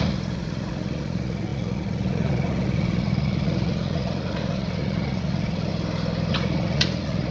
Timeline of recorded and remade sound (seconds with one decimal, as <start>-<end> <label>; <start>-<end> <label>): 0.0-5.7 remade; 5.7-6.3 recorded; 6.3-7.3 remade